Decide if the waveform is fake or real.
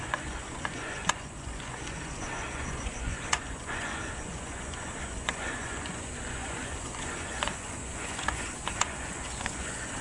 fake